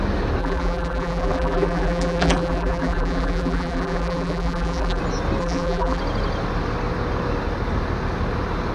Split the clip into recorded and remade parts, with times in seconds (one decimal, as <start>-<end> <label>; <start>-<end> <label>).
0.0-0.4 recorded; 0.4-5.0 remade; 5.0-5.4 recorded; 5.4-6.0 remade; 6.0-8.7 recorded